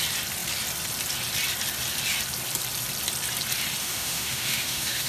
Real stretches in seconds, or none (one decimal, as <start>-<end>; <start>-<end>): 0.0-3.8